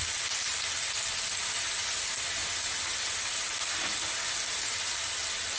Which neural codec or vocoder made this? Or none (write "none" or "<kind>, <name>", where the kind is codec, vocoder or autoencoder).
none